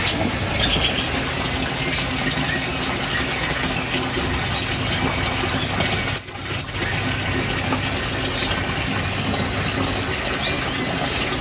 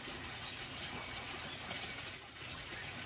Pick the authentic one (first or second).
first